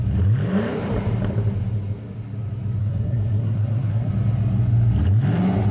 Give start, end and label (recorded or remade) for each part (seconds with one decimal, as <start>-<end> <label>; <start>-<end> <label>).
0.0-2.8 recorded; 2.8-4.1 remade; 4.1-5.7 recorded